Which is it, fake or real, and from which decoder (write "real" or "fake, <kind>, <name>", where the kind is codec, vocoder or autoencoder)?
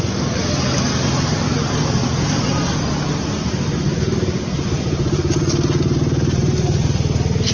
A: real